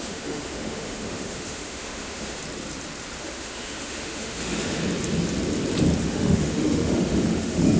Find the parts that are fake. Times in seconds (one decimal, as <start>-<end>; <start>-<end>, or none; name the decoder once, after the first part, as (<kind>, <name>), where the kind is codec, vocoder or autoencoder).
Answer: 0.0-2.4 (autoencoder, DAC-VAE); 3.2-4.8; 6.0-7.8